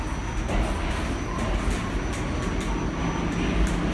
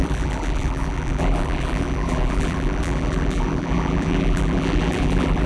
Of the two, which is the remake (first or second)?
second